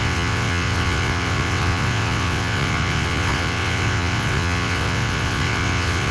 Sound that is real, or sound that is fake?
fake